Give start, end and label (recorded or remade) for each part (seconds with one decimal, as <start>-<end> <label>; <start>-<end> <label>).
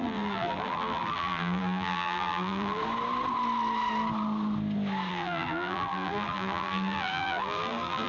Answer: 0.0-2.8 remade; 2.8-5.1 recorded; 5.1-8.1 remade